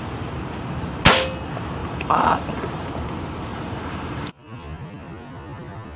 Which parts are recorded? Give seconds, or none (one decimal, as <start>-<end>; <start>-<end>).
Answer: 0.0-1.8; 2.9-3.5; 4.3-6.0